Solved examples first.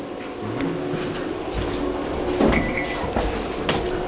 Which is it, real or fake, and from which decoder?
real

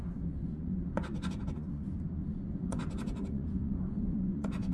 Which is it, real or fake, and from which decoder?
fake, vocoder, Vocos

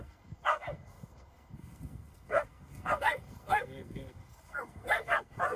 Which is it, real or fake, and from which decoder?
fake, codec, SNAC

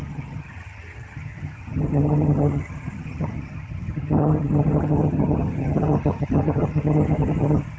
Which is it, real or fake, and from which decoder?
fake, vocoder, HiFi-GAN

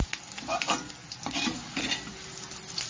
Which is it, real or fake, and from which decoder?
real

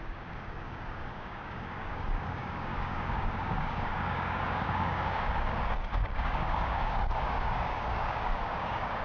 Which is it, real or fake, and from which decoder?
fake, codec, DAC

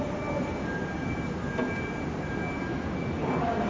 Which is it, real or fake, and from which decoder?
real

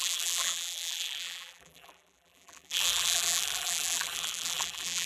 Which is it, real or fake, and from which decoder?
fake, vocoder, BigVGAN v2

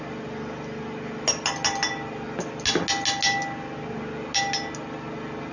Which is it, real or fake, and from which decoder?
real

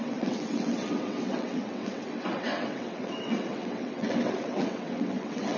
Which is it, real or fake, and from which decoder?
fake, vocoder, WaveNeXt